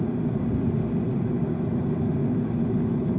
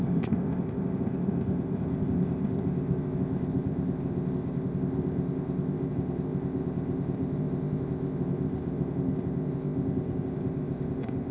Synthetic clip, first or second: second